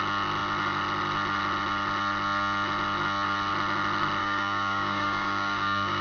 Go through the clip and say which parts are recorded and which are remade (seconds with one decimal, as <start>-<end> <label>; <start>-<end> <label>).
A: 0.0-4.2 recorded; 4.2-6.0 remade